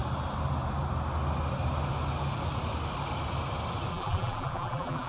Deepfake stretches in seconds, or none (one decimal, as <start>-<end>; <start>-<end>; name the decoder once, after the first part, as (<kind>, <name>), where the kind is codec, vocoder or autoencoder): 3.9-5.1 (vocoder, BigVGAN v2)